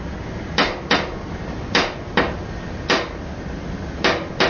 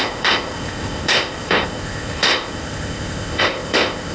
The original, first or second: first